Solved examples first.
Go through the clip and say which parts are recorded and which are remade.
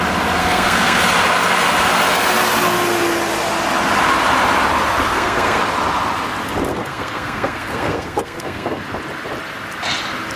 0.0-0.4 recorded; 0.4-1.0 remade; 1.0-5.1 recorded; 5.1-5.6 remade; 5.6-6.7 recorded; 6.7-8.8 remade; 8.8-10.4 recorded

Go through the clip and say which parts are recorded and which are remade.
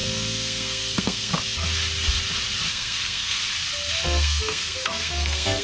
0.0-1.3 remade; 1.3-2.7 recorded; 2.7-3.4 remade; 3.4-4.0 recorded; 4.0-5.6 remade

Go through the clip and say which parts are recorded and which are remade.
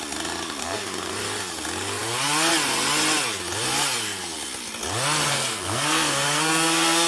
0.0-0.6 recorded; 0.6-1.1 remade; 1.1-5.3 recorded; 5.3-7.1 remade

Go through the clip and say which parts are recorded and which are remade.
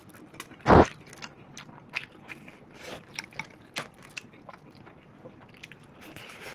0.0-6.5 recorded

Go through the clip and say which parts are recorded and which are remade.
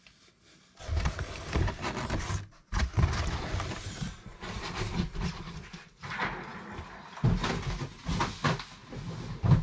0.0-9.6 recorded